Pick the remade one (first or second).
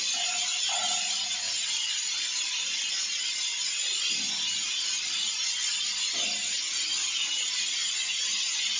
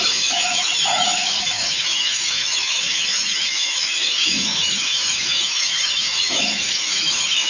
second